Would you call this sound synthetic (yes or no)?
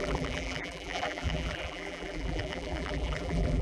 yes